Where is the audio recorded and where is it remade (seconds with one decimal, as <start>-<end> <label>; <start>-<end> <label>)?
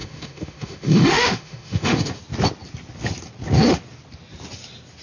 0.0-2.2 remade; 2.2-5.0 recorded